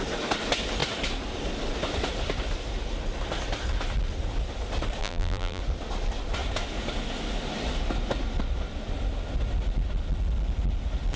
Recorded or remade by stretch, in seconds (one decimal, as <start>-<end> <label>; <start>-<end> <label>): 0.0-5.0 recorded; 5.0-5.6 remade; 5.6-11.2 recorded